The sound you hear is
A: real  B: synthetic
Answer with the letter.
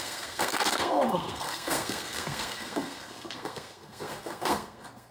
B